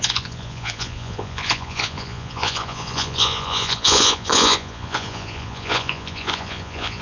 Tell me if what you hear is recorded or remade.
remade